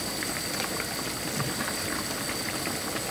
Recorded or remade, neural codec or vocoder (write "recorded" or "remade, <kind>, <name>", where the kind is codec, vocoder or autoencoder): recorded